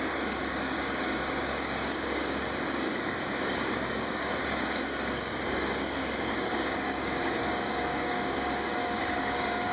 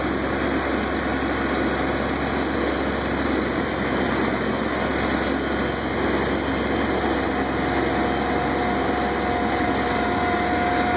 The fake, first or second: first